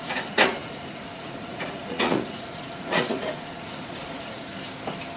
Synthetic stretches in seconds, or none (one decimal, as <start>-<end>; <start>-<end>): 0.0-4.5